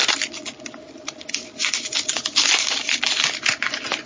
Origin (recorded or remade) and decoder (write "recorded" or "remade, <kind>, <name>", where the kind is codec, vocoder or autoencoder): recorded